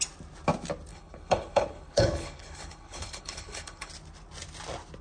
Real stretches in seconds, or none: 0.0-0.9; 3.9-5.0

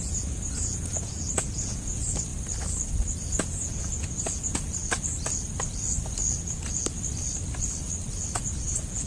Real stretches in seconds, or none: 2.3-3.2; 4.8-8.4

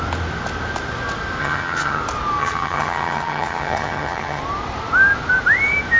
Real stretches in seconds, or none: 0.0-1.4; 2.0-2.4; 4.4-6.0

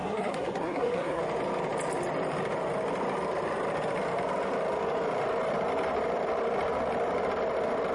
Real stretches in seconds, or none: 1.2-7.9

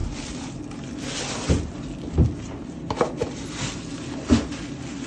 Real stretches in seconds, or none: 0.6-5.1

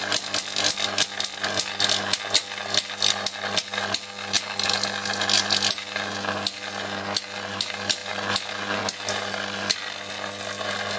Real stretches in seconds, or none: 0.0-11.0